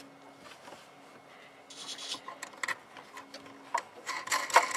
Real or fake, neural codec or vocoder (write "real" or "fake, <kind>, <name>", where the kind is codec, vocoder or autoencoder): real